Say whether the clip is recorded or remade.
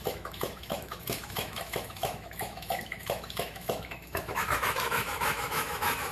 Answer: remade